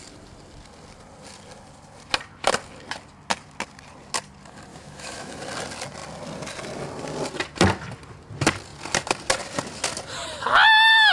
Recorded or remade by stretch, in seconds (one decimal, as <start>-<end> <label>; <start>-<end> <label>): 0.0-4.7 recorded; 4.7-5.4 remade; 5.4-11.1 recorded